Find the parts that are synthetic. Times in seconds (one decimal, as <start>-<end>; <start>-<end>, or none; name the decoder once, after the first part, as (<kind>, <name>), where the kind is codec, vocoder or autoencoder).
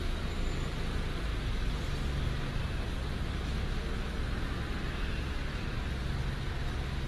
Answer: none